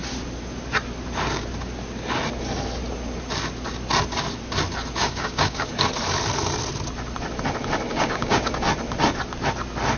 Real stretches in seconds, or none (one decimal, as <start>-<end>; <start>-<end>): 0.0-5.0; 5.7-7.9; 8.5-10.0